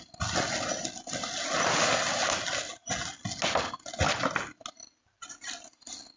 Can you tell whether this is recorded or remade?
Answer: recorded